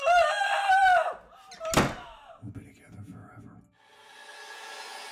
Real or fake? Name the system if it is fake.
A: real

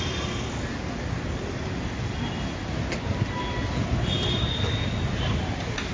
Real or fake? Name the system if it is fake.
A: real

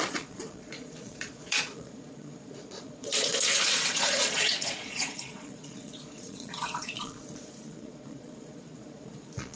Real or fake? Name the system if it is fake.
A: fake, vocoder, Vocos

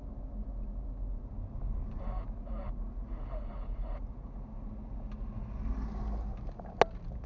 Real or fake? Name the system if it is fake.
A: real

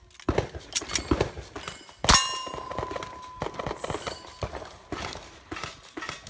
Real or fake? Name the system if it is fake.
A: real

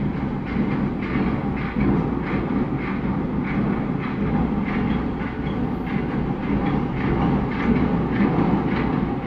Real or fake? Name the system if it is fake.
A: real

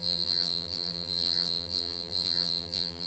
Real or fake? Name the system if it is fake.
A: fake, vocoder, BigVGAN v2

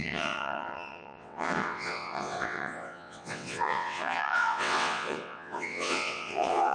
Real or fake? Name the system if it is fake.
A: fake, vocoder, WaveNeXt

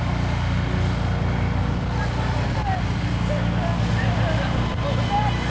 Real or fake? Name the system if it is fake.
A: real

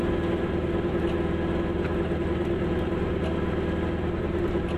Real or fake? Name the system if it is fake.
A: real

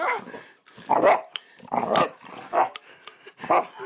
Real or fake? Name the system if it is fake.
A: real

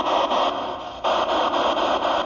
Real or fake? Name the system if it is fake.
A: real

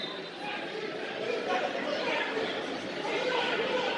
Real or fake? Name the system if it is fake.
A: real